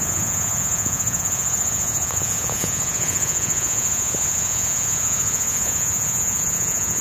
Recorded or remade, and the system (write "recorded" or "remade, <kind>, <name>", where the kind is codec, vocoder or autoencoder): remade, vocoder, Vocos